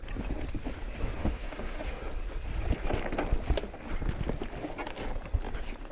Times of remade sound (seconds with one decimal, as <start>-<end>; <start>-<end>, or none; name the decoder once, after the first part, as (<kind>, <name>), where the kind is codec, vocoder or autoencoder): 1.2-2.0 (autoencoder, DAC-VAE)